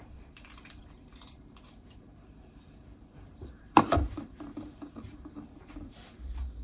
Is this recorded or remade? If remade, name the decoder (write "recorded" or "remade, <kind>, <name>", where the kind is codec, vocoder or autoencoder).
remade, vocoder, BigVGAN v2